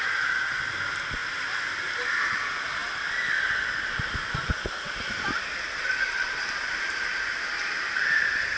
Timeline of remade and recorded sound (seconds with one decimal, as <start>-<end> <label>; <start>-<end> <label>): 0.0-8.6 recorded